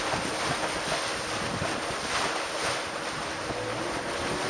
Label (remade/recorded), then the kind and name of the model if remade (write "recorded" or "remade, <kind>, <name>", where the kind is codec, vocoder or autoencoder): recorded